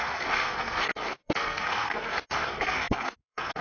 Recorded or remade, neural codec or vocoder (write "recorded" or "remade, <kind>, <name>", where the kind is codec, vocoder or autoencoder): remade, codec, SNAC